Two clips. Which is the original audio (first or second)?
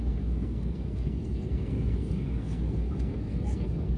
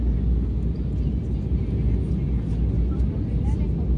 second